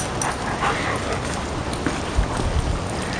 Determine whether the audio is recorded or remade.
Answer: recorded